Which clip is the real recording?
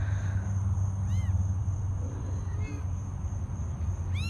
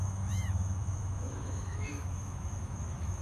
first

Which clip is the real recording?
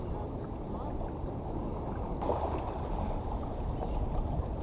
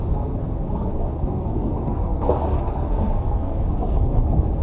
first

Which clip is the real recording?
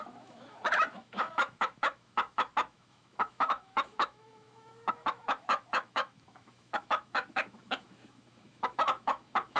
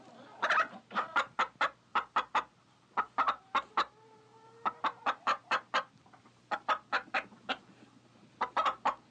second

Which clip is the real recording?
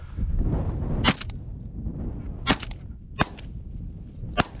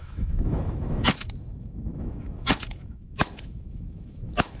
first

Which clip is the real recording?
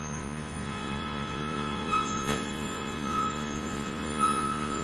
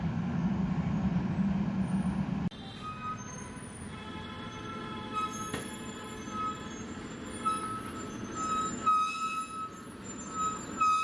second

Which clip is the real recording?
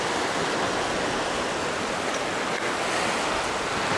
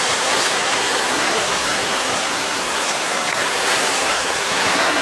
first